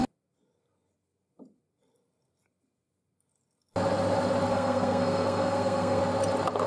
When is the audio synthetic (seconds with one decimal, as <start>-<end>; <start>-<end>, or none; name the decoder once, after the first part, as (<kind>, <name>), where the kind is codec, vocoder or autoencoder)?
4.5-6.0 (codec, SNAC)